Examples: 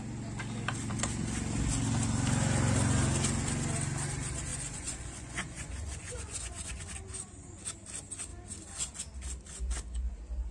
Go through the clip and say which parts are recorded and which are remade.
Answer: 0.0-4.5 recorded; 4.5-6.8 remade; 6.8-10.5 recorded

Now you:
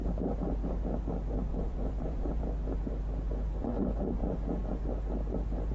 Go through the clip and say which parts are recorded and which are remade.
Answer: 0.0-1.5 recorded; 1.5-2.4 remade; 2.4-5.7 recorded

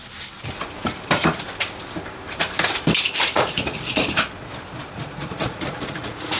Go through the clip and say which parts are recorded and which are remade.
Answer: 0.0-3.1 recorded; 3.1-4.0 remade; 4.0-5.3 recorded; 5.3-6.4 remade

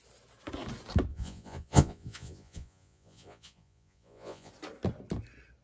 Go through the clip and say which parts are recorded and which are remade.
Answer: 0.0-1.1 recorded; 1.1-4.5 remade; 4.5-5.6 recorded

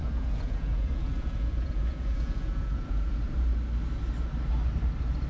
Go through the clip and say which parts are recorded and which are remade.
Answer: 0.0-3.2 remade; 3.2-5.3 recorded